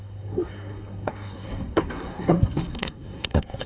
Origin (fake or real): fake